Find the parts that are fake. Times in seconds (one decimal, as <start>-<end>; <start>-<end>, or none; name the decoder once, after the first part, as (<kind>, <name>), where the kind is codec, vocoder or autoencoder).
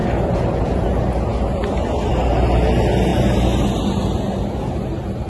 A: none